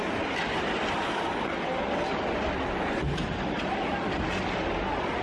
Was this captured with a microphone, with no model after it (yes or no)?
yes